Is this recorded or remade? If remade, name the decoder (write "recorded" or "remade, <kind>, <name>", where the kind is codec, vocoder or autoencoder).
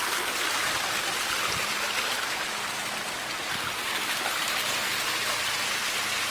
recorded